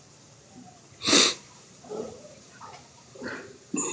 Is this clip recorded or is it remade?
remade